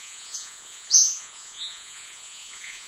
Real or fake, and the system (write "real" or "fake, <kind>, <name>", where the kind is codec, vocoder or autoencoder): fake, vocoder, Vocos